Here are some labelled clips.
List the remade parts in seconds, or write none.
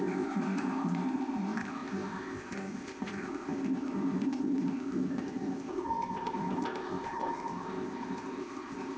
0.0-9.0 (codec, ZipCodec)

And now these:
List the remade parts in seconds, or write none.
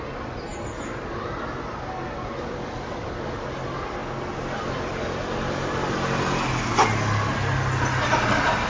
none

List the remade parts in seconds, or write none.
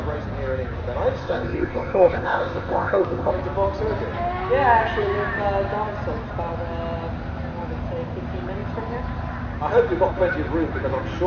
1.2-3.3 (codec, ZipCodec)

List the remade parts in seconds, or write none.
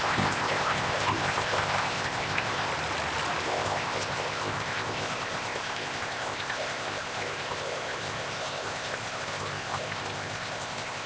0.0-2.7 (codec, ZipCodec); 3.4-11.1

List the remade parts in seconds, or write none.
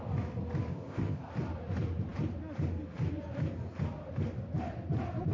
0.7-1.3 (codec, ZipCodec)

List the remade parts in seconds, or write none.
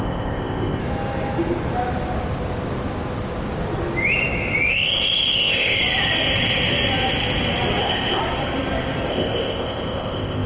0.0-0.8 (codec, ZipCodec); 4.7-5.8; 7.8-8.2; 9.1-10.5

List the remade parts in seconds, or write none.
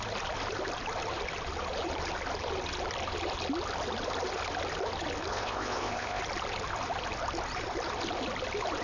5.3-6.2 (codec, ZipCodec)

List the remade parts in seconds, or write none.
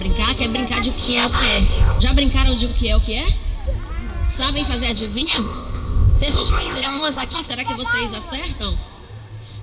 1.0-2.0 (codec, ZipCodec); 4.9-7.5